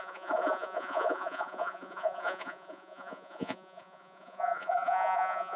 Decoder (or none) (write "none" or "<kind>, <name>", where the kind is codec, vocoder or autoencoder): vocoder, Vocos